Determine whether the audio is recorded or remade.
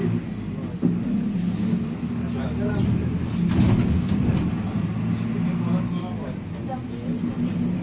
recorded